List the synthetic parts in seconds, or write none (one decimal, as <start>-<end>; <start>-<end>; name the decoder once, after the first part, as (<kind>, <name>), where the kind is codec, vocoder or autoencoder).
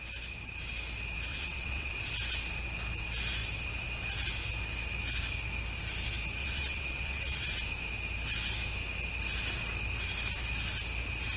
1.3-1.9 (vocoder, WaveNeXt); 6.4-7.5